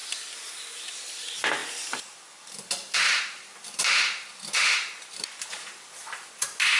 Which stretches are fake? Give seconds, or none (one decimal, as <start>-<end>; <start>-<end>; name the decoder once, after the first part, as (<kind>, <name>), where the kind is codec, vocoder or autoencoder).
1.6-5.7 (vocoder, BigVGAN v2)